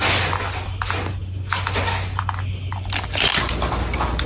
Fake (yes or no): no